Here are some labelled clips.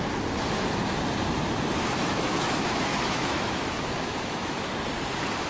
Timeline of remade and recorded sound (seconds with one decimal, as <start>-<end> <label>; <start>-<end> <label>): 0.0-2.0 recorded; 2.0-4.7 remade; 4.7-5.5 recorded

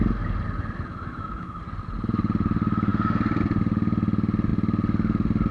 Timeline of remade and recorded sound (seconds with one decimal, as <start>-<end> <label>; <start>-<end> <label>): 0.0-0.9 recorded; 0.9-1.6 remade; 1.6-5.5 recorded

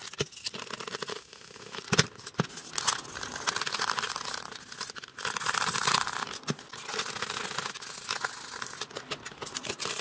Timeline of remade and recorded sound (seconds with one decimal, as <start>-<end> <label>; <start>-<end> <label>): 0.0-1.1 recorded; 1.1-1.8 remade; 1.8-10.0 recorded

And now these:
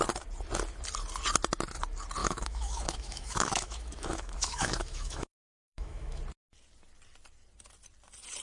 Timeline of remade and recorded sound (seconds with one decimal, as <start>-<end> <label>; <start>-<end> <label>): 0.0-2.2 recorded; 2.2-6.2 remade; 6.2-8.4 recorded

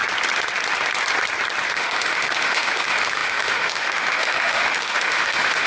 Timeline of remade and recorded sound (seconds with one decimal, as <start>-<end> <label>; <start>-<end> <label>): 0.0-1.7 recorded; 1.7-5.7 remade

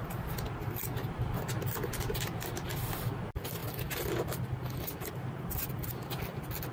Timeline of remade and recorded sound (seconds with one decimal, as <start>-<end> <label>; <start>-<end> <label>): 0.0-6.7 recorded